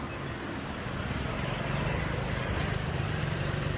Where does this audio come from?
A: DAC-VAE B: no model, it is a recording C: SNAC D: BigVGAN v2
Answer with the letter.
B